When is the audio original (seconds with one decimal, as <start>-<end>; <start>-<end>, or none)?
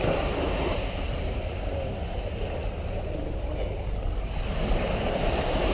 0.0-5.7